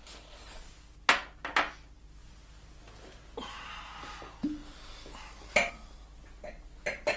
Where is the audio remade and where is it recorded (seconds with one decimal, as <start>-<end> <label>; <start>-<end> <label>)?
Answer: 0.0-0.6 remade; 0.6-7.2 recorded